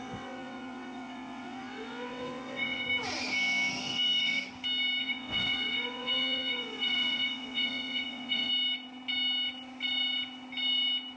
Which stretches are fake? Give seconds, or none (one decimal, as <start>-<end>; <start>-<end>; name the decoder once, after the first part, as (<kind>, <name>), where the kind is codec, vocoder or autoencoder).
0.0-2.9 (vocoder, WaveNeXt); 3.8-4.4; 5.0-8.5